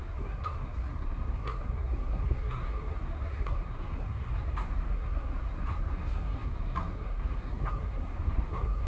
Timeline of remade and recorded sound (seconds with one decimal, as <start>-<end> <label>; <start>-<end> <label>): 0.0-8.9 remade